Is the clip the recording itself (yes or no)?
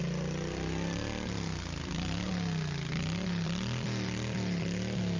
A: yes